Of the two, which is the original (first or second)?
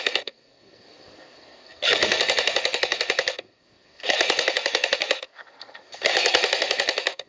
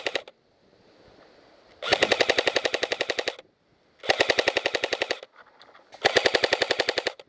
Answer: second